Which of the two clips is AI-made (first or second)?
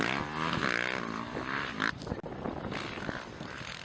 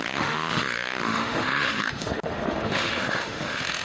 second